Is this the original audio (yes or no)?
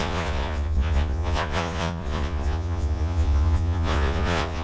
no